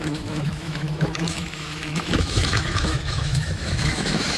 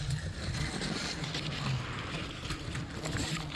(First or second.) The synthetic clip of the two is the first